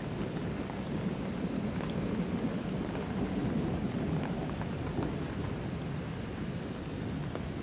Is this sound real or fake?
real